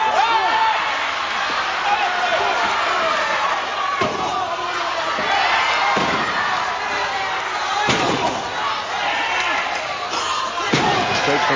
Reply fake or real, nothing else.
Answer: real